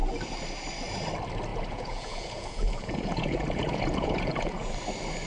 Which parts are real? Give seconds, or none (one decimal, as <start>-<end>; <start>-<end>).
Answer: 0.0-1.5; 4.7-5.3